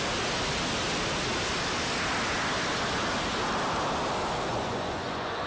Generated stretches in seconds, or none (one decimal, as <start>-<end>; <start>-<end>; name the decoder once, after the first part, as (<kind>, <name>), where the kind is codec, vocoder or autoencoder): 4.5-5.5 (vocoder, Vocos)